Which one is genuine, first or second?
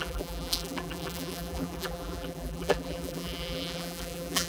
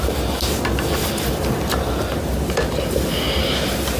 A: second